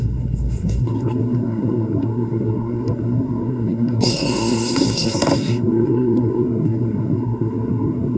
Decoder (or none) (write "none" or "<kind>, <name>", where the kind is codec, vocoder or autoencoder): codec, SNAC